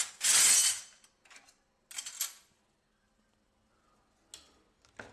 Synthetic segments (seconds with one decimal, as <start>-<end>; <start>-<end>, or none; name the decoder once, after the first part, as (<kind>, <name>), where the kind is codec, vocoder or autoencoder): none